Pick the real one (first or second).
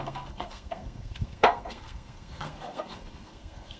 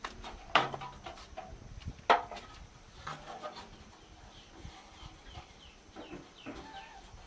second